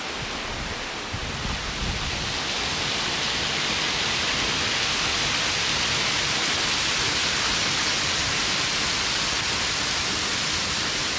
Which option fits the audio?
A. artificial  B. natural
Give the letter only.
B